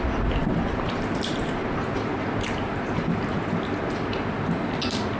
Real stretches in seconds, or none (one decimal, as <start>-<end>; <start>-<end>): 0.0-0.4; 3.5-5.2